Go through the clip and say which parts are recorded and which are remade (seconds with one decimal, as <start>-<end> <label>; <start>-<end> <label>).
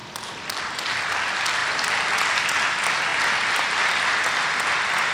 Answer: 0.0-5.1 recorded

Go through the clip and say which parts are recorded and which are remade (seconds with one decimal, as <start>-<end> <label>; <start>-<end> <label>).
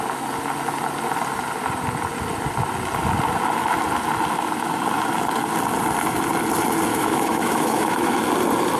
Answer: 0.0-6.9 recorded; 6.9-8.2 remade; 8.2-8.8 recorded